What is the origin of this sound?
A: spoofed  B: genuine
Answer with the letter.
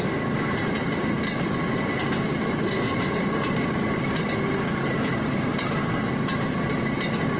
A